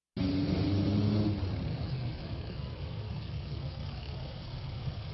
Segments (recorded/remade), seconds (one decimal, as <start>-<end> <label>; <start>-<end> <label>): 0.0-1.7 recorded; 1.7-5.1 remade